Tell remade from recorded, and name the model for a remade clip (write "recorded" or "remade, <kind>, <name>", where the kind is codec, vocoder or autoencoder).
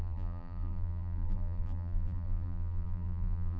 remade, vocoder, BigVGAN v2